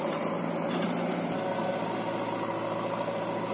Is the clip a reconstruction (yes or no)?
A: no